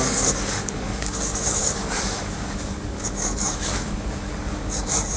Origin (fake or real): fake